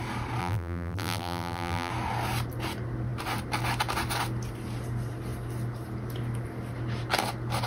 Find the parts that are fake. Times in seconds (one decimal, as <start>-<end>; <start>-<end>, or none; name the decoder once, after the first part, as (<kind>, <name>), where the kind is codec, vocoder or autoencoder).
0.4-1.9 (vocoder, BigVGAN v2)